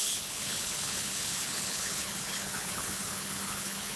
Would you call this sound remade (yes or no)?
yes